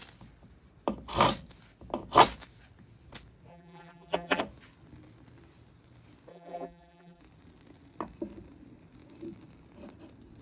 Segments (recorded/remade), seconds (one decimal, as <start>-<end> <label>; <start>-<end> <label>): 0.0-3.5 recorded; 3.5-4.4 remade; 4.4-6.3 recorded; 6.3-7.2 remade; 7.2-10.4 recorded